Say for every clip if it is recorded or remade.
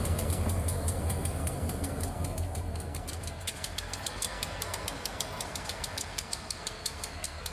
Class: remade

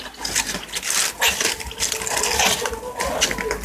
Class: recorded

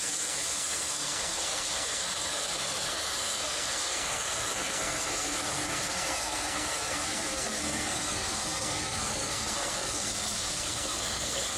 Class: remade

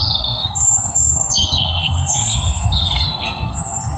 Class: remade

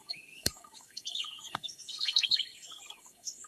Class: remade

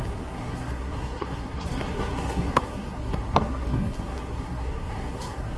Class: remade